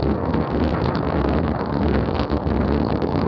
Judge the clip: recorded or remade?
remade